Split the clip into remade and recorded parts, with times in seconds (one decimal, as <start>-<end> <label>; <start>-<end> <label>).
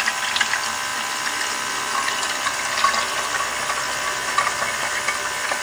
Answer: 0.0-5.6 recorded